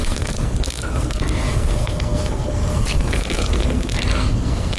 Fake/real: fake